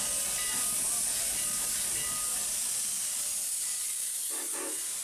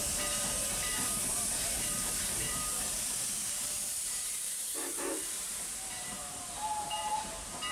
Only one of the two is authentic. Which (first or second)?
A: first